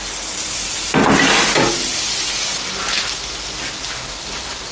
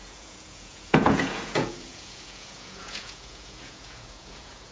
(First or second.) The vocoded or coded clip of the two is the second